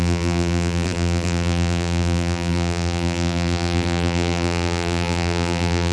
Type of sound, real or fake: fake